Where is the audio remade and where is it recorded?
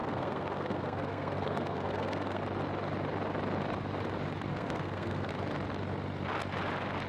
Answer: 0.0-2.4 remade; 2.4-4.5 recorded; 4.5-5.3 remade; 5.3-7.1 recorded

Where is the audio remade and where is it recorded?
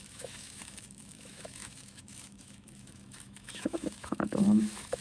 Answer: 0.0-5.0 remade